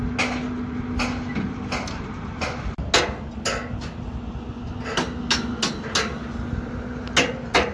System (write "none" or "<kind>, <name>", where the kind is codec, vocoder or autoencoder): none